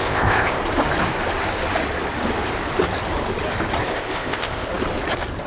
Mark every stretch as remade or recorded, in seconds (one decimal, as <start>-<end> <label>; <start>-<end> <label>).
0.0-0.6 remade; 0.6-3.9 recorded; 3.9-4.7 remade; 4.7-5.5 recorded